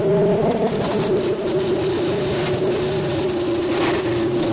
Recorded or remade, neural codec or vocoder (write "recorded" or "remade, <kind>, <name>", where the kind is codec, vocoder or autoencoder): recorded